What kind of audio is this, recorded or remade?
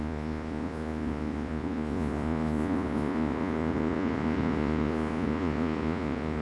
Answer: remade